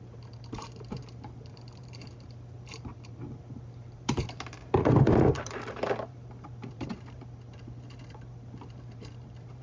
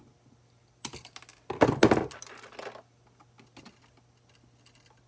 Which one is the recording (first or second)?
second